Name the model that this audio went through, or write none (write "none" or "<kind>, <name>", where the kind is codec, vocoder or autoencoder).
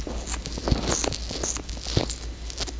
none